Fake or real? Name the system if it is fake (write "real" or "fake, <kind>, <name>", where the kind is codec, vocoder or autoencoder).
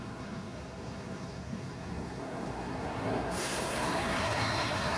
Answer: fake, codec, SNAC